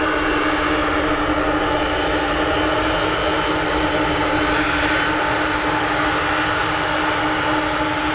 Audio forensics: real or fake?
real